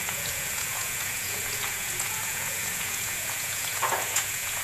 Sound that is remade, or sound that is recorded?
remade